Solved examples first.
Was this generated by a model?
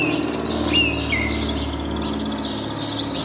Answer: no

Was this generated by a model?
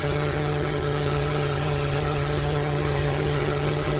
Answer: yes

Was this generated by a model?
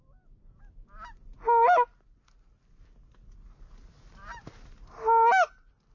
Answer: no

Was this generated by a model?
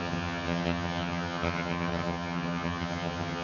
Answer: yes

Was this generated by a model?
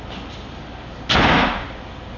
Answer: no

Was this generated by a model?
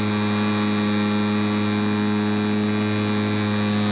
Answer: no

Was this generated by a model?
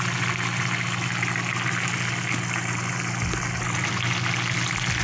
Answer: no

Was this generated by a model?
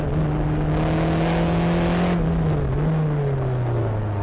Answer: no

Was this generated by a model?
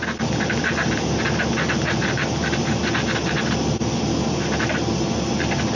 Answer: no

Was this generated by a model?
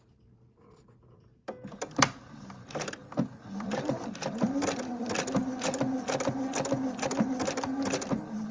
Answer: no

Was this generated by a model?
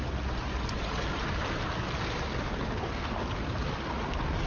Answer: no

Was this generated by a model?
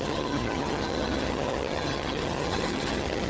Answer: yes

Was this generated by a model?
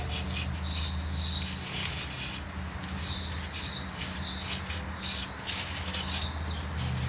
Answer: no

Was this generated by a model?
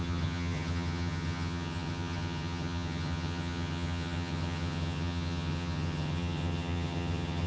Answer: yes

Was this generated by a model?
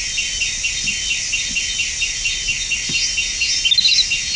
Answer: no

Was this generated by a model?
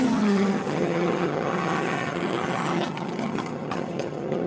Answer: yes